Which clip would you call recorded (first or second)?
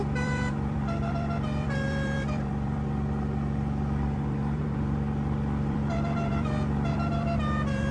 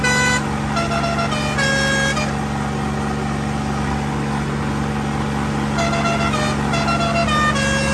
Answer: second